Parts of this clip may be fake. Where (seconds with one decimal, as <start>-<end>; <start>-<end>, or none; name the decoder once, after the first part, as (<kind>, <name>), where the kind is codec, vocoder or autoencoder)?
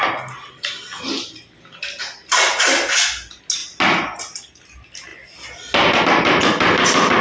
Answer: none